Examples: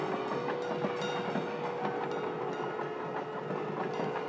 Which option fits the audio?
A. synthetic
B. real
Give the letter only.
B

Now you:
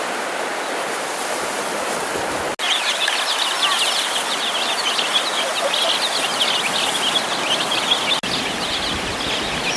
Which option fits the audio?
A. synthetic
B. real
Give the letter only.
B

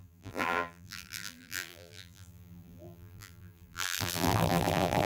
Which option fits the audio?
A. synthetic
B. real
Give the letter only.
A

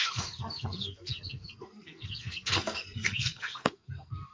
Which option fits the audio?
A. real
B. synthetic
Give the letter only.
B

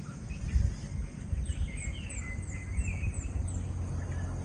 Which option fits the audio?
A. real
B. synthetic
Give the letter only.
A